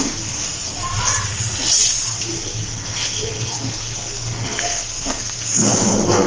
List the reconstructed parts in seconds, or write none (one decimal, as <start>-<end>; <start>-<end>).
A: 0.0-0.7; 1.9-6.3